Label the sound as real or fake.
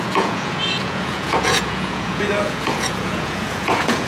fake